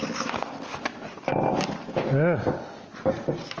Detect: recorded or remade recorded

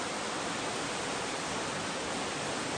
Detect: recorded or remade recorded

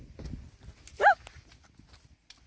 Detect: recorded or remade recorded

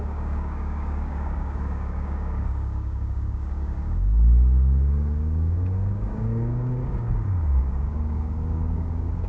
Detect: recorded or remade remade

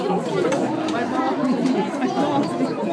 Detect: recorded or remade recorded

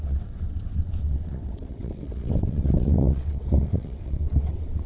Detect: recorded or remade remade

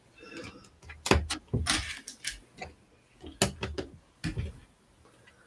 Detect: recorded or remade recorded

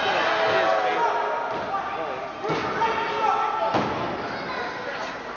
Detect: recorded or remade recorded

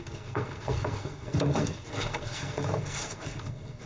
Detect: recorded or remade remade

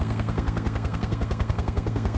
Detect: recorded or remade remade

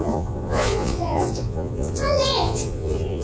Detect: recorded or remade remade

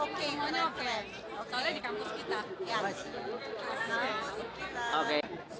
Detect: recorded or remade recorded